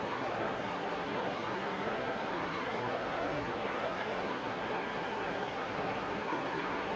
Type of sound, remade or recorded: remade